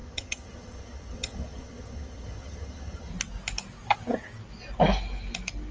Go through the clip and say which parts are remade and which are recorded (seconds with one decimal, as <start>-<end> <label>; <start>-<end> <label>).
0.0-3.1 remade; 3.1-5.7 recorded